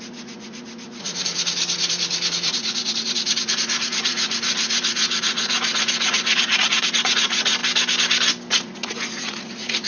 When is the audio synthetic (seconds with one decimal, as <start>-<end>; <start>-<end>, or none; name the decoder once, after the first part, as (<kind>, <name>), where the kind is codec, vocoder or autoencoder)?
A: 0.0-7.6 (vocoder, Vocos); 8.5-9.9

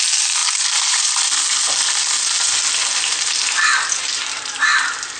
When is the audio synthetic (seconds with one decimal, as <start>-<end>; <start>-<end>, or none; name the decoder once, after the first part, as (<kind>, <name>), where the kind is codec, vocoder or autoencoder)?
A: none